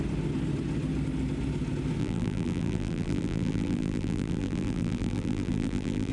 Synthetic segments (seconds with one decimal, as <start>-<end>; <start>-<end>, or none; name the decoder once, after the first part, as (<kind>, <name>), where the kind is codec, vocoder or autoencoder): 2.0-6.1 (vocoder, BigVGAN v2)